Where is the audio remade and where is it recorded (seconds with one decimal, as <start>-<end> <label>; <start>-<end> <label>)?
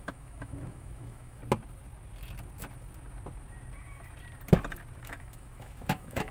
0.0-1.4 remade; 1.4-5.0 recorded; 5.0-6.3 remade